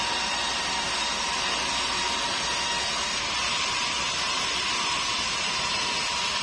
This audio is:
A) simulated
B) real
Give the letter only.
B